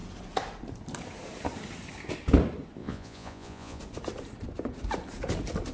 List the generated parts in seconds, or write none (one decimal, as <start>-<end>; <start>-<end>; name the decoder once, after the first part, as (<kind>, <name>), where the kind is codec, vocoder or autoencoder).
2.8-3.8 (vocoder, Vocos)